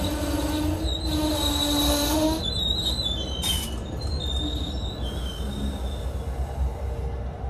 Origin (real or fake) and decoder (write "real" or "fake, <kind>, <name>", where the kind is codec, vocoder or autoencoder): real